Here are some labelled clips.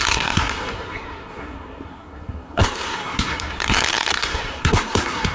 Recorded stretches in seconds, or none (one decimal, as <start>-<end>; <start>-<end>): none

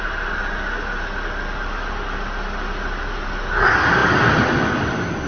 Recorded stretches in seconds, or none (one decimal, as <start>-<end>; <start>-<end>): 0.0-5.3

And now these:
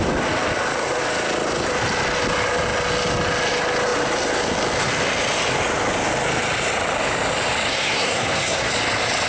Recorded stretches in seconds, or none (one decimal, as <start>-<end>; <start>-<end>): 0.0-7.7; 8.7-9.3

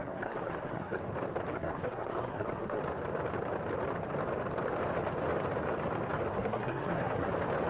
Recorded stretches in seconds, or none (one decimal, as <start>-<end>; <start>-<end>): 1.0-1.5; 2.8-6.3; 7.3-7.7

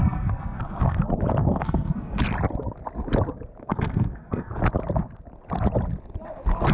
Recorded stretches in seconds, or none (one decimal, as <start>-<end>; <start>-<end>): 1.0-1.4; 2.2-3.6; 4.5-6.7